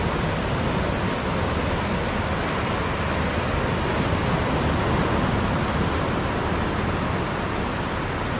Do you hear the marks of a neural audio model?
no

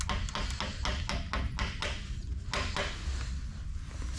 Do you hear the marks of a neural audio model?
no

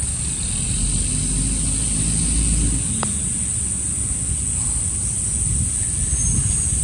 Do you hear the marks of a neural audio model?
no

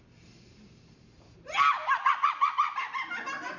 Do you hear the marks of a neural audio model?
no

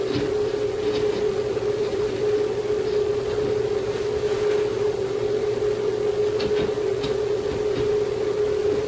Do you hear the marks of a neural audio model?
no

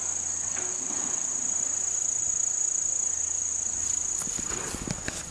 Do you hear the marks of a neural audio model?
no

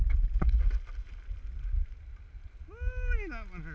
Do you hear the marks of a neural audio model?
no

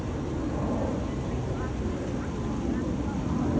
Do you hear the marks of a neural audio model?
no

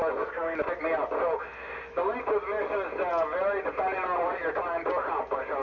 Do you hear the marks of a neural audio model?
no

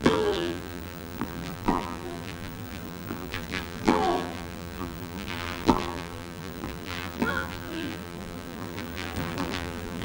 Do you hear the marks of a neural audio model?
yes